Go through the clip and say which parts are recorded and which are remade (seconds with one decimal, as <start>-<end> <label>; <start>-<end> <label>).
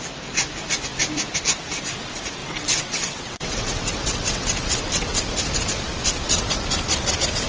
0.0-2.4 recorded; 2.4-5.2 remade; 5.2-7.5 recorded